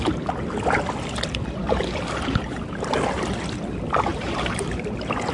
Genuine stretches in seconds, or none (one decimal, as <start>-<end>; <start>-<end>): 0.0-4.1